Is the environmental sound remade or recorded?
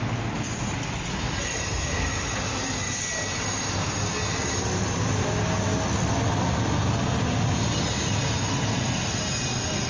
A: recorded